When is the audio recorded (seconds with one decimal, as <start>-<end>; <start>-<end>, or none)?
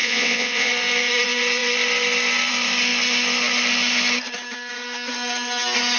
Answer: 0.7-6.0